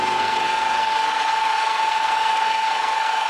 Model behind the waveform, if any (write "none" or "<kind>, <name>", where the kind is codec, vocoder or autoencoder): codec, SNAC